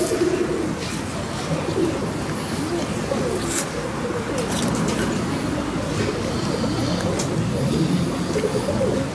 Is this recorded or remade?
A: recorded